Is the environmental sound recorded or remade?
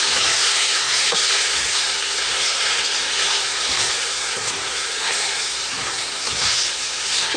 remade